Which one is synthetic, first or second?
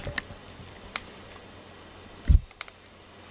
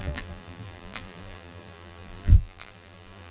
second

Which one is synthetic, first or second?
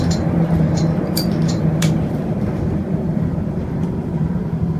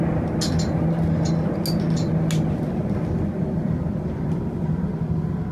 first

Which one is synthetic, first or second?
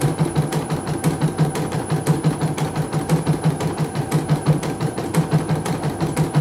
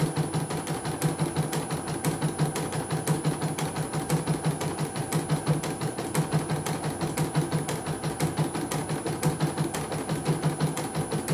first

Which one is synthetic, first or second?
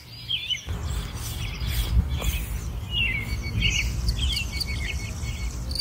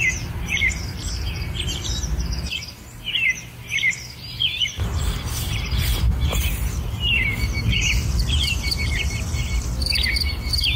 second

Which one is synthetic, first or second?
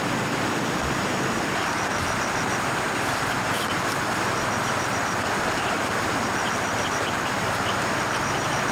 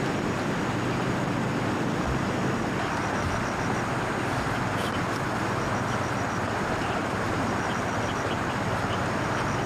first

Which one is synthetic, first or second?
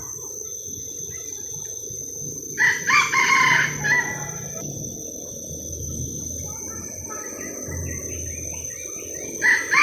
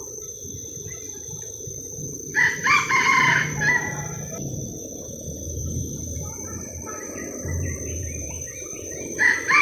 second